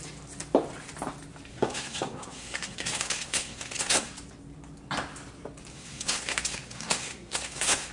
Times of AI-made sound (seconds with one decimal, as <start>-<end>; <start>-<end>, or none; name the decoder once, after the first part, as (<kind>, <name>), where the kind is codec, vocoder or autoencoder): 1.5-4.1 (codec, SNAC); 5.7-7.9